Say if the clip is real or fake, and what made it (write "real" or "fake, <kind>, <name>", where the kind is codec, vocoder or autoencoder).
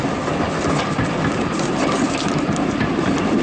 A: real